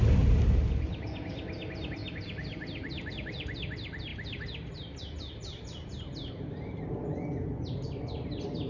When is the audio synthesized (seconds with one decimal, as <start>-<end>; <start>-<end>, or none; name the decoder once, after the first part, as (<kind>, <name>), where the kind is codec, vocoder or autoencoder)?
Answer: none